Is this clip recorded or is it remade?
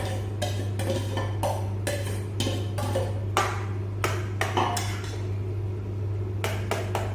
recorded